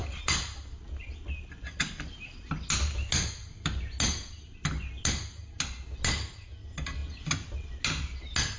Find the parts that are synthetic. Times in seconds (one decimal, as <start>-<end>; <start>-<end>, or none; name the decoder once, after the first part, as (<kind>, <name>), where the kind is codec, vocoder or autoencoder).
none